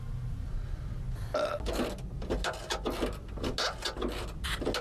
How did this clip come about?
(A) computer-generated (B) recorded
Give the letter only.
B